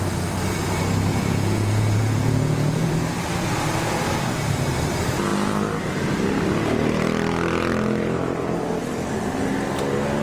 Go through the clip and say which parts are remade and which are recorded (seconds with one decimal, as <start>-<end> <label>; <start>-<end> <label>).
0.0-1.1 recorded; 1.1-2.9 remade; 2.9-10.2 recorded